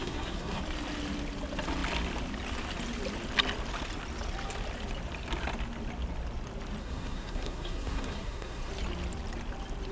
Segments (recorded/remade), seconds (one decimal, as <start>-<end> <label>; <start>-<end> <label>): 0.0-0.6 remade; 0.6-6.8 recorded; 6.8-8.7 remade; 8.7-9.9 recorded